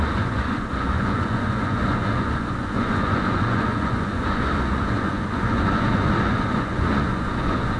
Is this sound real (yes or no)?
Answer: no